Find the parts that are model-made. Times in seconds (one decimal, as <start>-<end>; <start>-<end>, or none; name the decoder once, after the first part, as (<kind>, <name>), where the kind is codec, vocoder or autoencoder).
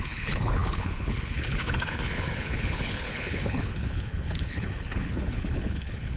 0.0-6.2 (codec, HILCodec)